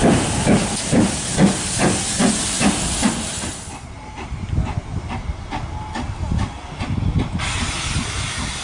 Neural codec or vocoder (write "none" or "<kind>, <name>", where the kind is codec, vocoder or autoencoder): none